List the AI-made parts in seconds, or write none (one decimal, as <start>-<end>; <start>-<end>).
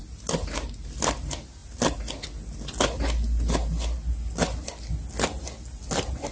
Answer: none